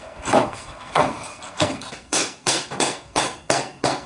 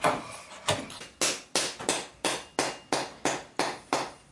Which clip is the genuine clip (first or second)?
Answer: second